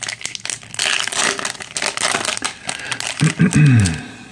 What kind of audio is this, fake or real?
real